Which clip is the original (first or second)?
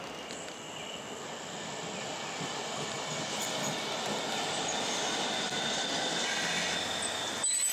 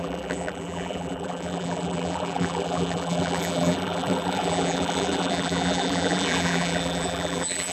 first